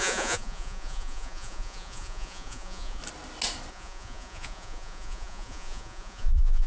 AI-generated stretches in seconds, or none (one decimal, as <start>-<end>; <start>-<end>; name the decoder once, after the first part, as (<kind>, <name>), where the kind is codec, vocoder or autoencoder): 0.0-3.0 (vocoder, Vocos); 3.7-6.7